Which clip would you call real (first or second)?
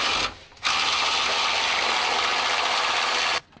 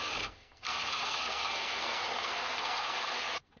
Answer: first